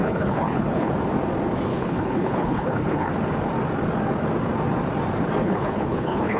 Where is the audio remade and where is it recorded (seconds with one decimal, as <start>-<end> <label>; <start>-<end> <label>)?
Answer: 0.0-0.9 remade; 0.9-1.7 recorded; 1.7-3.1 remade; 3.1-5.4 recorded; 5.4-6.4 remade